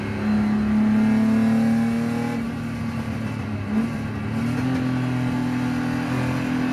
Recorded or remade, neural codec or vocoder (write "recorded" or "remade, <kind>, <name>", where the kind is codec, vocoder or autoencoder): recorded